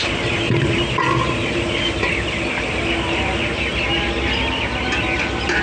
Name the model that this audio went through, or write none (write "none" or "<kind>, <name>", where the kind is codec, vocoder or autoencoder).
none